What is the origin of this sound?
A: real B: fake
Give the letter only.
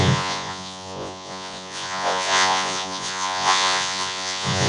B